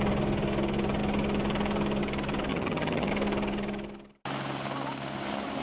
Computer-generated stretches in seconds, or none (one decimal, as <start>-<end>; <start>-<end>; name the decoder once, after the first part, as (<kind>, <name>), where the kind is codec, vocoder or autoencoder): 2.5-3.1 (vocoder, HiFi-GAN)